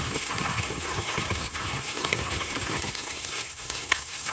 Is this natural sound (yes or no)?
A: no